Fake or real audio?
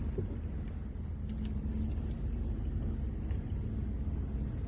real